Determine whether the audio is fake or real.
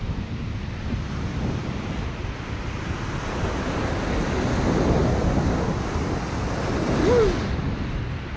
real